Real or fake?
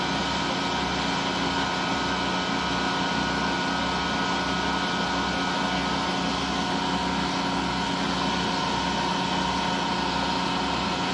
real